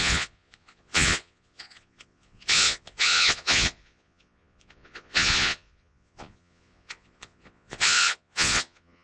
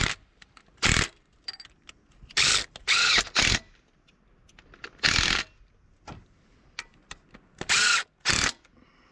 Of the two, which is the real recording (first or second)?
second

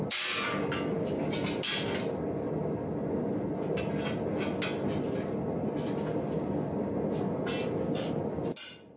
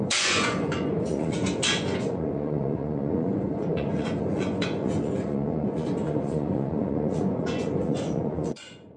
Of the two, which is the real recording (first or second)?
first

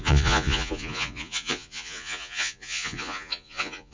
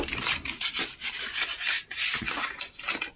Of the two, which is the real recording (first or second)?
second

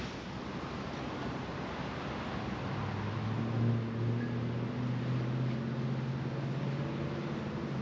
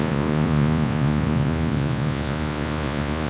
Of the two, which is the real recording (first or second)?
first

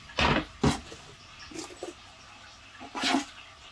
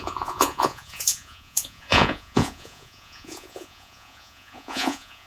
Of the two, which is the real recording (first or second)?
first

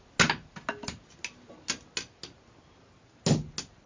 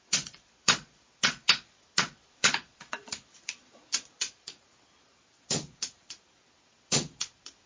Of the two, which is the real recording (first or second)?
first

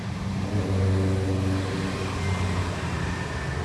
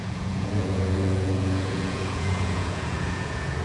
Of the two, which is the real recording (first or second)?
first